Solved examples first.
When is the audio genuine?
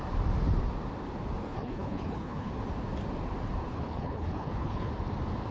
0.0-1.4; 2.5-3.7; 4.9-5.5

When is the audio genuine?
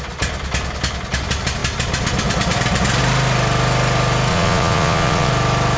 0.0-4.3; 5.3-5.8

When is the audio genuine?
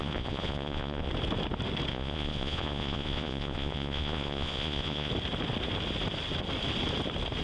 1.1-1.9; 5.1-7.4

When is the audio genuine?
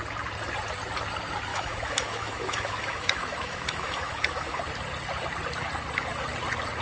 0.0-1.5; 4.6-6.8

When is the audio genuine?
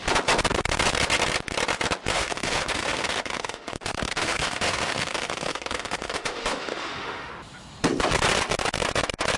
0.0-2.1; 7.3-9.4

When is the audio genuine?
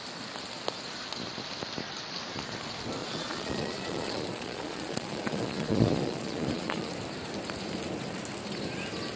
0.0-3.0; 6.9-9.2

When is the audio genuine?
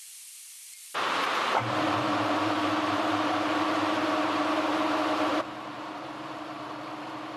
0.0-0.8; 4.5-5.3; 6.1-7.4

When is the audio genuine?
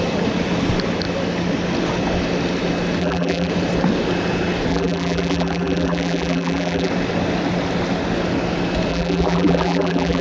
0.0-3.0; 3.5-4.7; 6.9-8.9